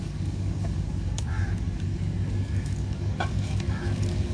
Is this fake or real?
fake